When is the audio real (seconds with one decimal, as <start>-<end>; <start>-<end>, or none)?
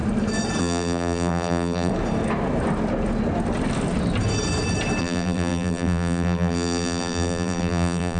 0.0-0.6; 1.9-5.0